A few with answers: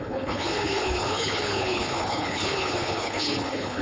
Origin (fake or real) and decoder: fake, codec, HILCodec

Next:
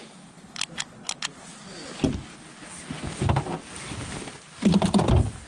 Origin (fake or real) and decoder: real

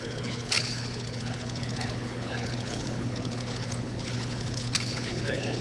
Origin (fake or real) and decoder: fake, codec, HILCodec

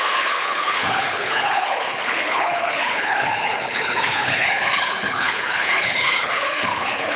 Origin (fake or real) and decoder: fake, codec, HILCodec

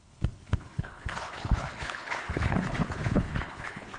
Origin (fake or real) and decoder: fake, codec, HILCodec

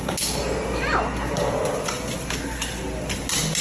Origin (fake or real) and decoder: real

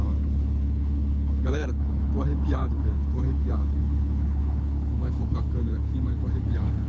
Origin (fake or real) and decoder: fake, codec, HILCodec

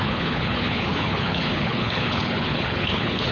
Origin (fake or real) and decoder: fake, codec, HILCodec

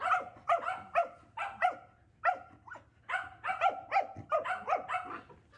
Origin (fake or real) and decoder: real